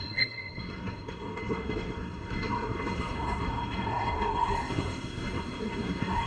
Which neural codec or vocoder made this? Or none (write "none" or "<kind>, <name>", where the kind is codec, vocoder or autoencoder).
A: codec, SNAC